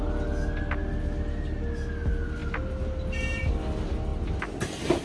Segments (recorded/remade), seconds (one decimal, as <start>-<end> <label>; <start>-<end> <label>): 0.0-5.0 recorded